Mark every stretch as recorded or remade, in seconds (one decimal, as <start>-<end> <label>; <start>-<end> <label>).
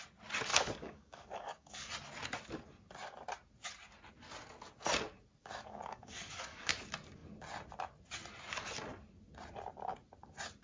0.0-0.5 recorded; 0.5-1.9 remade; 1.9-5.4 recorded; 5.4-6.7 remade; 6.7-10.6 recorded